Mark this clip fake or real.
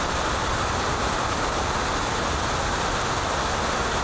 real